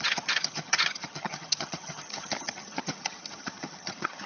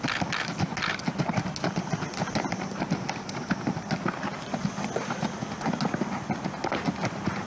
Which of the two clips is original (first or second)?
second